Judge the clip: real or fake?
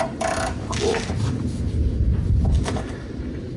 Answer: real